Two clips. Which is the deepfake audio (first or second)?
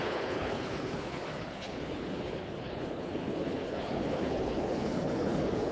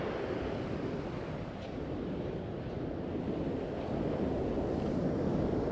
first